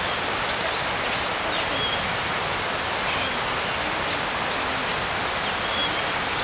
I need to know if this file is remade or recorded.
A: recorded